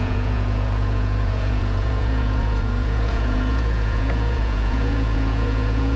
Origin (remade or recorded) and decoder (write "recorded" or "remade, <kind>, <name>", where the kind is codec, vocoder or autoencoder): remade, vocoder, Vocos